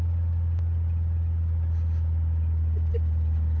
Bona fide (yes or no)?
yes